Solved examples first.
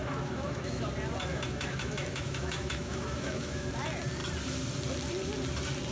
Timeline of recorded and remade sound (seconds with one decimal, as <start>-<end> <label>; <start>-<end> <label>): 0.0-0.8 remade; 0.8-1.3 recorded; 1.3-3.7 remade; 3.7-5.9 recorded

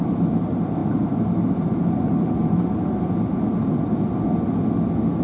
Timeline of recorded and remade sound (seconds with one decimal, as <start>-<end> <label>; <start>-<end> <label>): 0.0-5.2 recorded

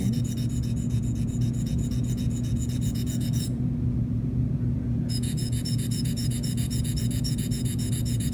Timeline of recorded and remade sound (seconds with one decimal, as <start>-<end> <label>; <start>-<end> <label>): 0.0-8.3 remade

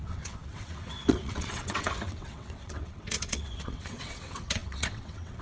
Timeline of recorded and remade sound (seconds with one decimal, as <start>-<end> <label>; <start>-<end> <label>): 0.0-5.4 remade